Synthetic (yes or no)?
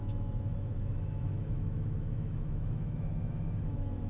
yes